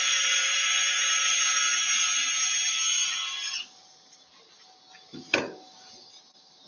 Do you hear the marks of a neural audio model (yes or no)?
no